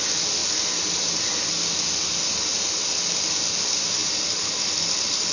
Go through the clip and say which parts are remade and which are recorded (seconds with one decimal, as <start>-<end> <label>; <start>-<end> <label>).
0.0-5.3 recorded